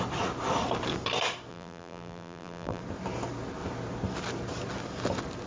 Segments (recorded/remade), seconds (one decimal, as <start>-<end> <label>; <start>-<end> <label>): 0.0-1.5 recorded; 1.5-2.8 remade; 2.8-5.5 recorded